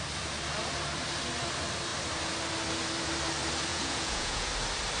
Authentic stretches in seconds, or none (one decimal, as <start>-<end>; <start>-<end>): 0.0-3.7; 4.5-5.0